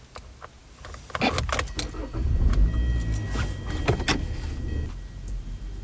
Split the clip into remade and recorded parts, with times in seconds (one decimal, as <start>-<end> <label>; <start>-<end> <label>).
0.0-5.8 recorded